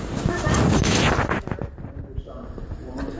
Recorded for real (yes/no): yes